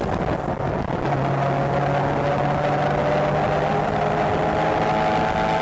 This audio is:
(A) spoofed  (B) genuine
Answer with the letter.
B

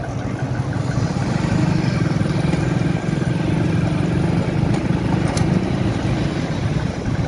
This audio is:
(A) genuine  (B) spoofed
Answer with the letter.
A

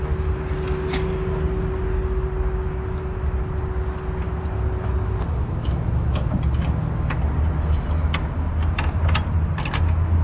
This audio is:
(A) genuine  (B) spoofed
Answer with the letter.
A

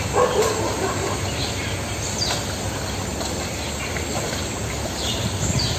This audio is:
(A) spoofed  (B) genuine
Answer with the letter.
B